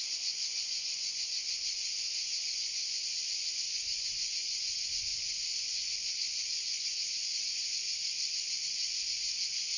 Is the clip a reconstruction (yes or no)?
yes